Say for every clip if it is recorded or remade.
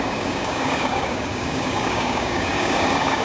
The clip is remade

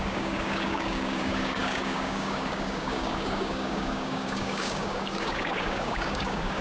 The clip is remade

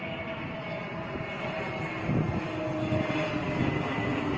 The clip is recorded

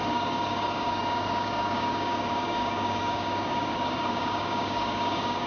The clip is remade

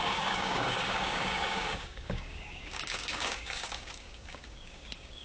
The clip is remade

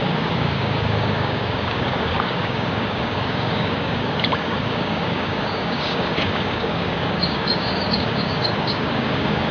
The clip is remade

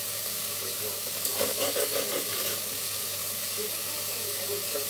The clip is remade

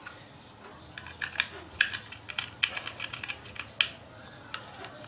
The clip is recorded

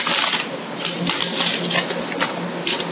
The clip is recorded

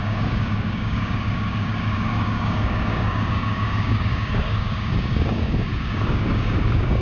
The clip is remade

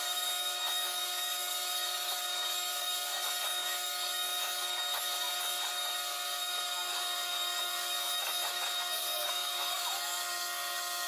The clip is remade